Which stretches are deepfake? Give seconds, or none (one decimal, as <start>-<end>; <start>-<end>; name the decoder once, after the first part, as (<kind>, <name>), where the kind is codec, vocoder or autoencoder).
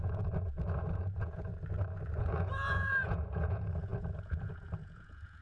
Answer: 0.0-1.5 (vocoder, Vocos); 2.2-5.4